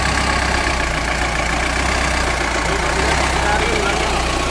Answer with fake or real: real